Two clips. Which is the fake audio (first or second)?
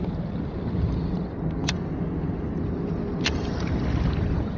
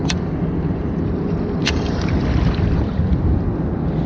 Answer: second